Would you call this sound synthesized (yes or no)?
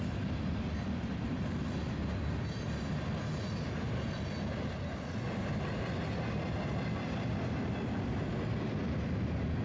no